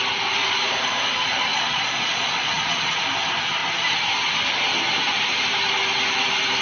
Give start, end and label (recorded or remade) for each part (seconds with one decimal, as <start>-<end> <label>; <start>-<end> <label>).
0.0-0.4 recorded; 0.4-1.0 remade; 1.0-1.5 recorded; 1.5-3.0 remade; 3.0-6.6 recorded